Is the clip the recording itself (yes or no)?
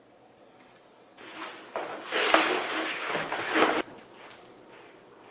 yes